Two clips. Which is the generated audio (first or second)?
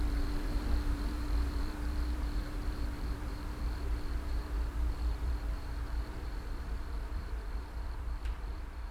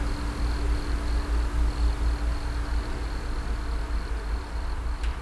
first